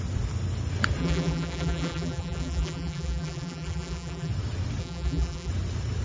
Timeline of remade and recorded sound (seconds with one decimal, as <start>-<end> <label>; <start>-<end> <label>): 0.0-1.0 recorded; 1.0-4.3 remade; 4.3-4.8 recorded; 4.8-5.5 remade; 5.5-6.0 recorded